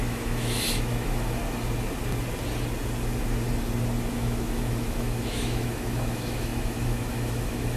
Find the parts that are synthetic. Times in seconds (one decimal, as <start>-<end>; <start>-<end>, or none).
0.0-1.4; 4.1-7.8